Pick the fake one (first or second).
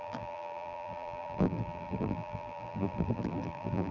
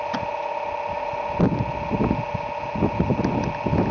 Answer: first